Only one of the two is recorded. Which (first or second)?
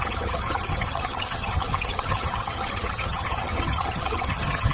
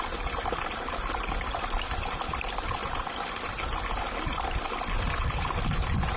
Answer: second